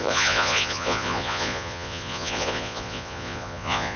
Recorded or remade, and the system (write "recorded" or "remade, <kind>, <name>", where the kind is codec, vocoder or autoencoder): remade, vocoder, Vocos